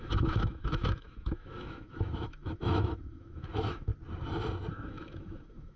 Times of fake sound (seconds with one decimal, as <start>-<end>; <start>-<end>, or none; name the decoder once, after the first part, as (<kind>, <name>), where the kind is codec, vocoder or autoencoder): 0.0-3.9 (autoencoder, DAC-VAE); 4.7-5.8